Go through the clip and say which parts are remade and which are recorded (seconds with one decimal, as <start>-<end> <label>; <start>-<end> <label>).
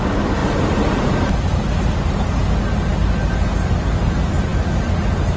0.0-5.4 recorded